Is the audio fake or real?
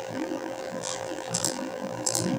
fake